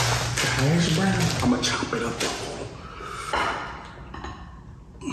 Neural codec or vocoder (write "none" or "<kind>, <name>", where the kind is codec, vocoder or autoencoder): none